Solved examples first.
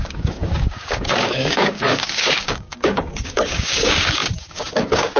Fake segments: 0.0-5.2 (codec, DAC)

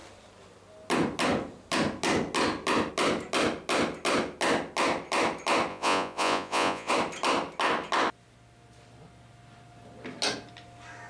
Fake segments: 5.7-6.9 (vocoder, Vocos)

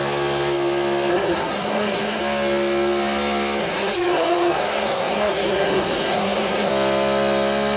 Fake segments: 1.1-2.2 (codec, SNAC); 3.6-6.7

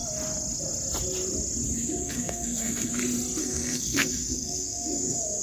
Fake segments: 2.0-2.9 (codec, SNAC); 3.4-5.4

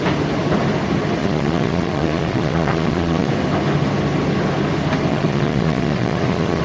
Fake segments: 1.2-3.3 (vocoder, Vocos); 5.1-6.6

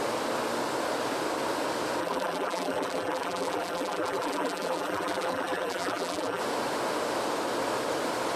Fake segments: 2.0-6.4 (vocoder, BigVGAN v2)

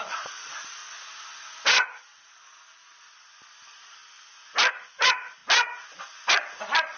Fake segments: 0.0-0.8 (vocoder, BigVGAN v2); 3.0-4.0; 4.7-5.4; 6.0-7.0